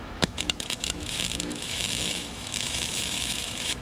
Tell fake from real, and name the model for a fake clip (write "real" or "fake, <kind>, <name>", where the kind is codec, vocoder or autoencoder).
fake, autoencoder, DAC-VAE